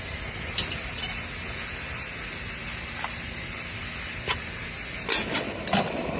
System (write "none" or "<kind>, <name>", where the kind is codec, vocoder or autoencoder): none